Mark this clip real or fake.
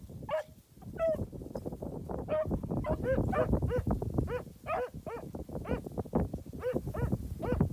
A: real